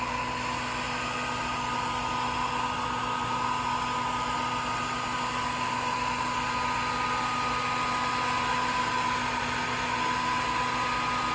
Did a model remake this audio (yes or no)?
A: no